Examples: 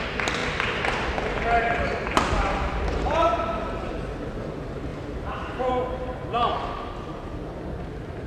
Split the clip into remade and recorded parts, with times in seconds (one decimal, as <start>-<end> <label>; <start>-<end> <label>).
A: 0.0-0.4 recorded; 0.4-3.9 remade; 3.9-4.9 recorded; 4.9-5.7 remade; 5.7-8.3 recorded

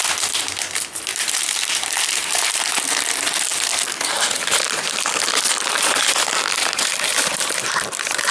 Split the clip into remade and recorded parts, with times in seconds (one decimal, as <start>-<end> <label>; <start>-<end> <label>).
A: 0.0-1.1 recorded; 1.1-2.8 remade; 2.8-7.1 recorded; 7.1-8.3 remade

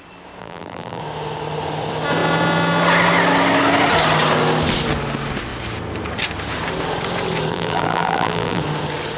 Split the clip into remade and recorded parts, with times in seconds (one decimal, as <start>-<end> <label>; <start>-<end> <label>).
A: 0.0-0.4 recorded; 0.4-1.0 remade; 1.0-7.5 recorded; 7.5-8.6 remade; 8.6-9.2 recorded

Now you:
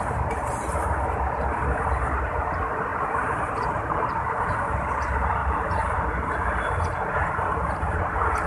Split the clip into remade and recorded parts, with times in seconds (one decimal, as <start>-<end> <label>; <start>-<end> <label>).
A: 0.0-2.9 recorded; 2.9-4.1 remade; 4.1-5.4 recorded; 5.4-6.0 remade; 6.0-8.5 recorded

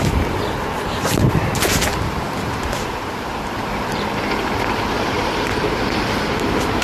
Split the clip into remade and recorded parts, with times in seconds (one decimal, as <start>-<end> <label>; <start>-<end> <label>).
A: 0.0-1.9 remade; 1.9-2.5 recorded; 2.5-6.8 remade

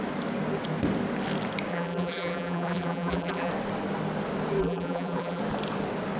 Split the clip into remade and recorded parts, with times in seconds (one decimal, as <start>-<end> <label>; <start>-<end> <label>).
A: 0.0-1.7 recorded; 1.7-3.5 remade; 3.5-4.6 recorded; 4.6-5.4 remade; 5.4-6.2 recorded

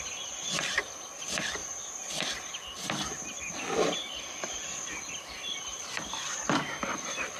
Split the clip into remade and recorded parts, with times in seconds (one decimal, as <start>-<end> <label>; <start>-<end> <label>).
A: 0.0-1.6 remade; 1.6-2.5 recorded; 2.5-7.4 remade

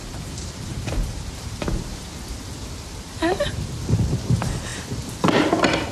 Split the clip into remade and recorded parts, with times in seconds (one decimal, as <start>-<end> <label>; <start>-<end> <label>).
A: 0.0-1.6 remade; 1.6-5.9 recorded